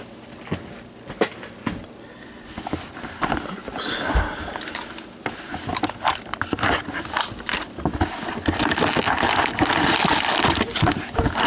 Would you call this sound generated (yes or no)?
no